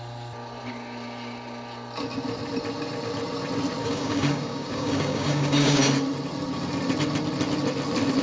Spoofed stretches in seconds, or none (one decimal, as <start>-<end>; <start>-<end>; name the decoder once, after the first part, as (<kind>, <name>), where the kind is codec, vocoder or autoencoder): 3.8-5.8 (codec, DAC)